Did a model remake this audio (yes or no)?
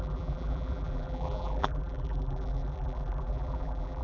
yes